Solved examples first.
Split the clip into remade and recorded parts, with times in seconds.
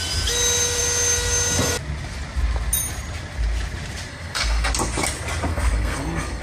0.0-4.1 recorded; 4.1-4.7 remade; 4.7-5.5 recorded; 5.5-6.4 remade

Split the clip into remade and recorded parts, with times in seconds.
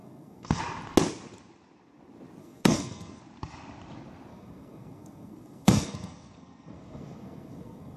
0.0-0.6 remade; 0.6-2.4 recorded; 2.4-3.2 remade; 3.2-4.3 recorded; 4.3-8.0 remade